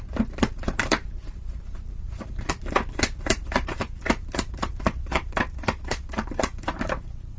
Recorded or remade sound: remade